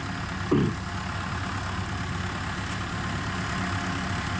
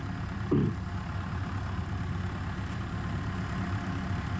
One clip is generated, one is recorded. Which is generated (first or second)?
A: second